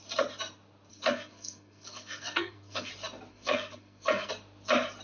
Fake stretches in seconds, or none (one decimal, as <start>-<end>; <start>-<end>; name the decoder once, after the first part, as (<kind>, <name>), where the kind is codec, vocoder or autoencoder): 0.9-2.9 (codec, SNAC); 3.3-4.3